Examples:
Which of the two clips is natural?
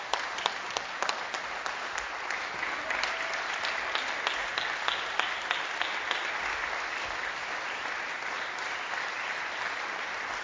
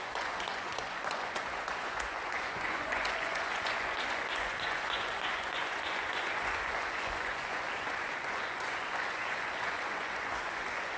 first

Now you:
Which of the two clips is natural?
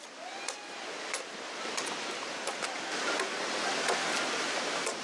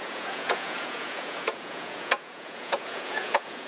first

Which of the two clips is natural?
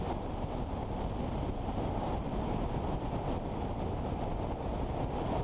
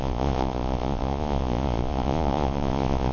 first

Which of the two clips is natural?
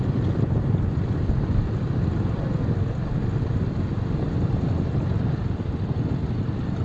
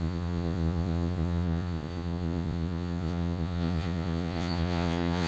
first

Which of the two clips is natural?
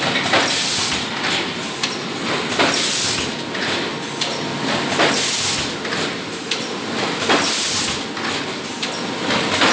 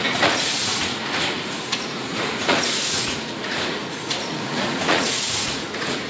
first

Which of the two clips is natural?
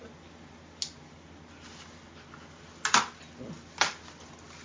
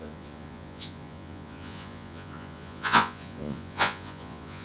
first